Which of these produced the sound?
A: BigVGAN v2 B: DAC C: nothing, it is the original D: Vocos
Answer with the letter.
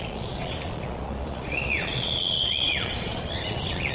D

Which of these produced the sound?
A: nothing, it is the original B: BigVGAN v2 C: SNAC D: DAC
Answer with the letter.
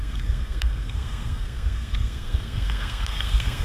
C